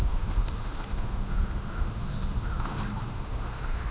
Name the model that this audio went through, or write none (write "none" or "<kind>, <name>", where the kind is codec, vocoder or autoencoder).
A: autoencoder, DAC-VAE